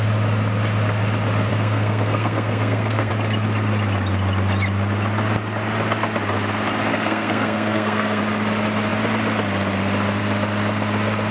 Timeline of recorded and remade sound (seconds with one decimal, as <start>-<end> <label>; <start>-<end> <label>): 0.0-1.5 recorded; 1.5-3.1 remade; 3.1-6.9 recorded; 6.9-8.2 remade; 8.2-11.3 recorded